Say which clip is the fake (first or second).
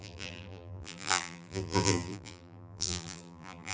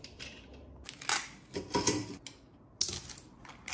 first